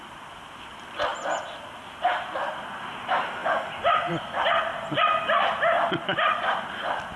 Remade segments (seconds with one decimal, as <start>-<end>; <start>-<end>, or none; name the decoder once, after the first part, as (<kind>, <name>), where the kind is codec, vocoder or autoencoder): 4.7-5.4 (vocoder, BigVGAN v2)